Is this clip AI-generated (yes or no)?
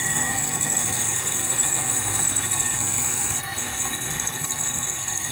yes